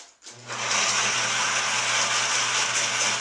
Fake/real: real